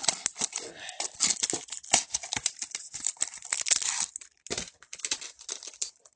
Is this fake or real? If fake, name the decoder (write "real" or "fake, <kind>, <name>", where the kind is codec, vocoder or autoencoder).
real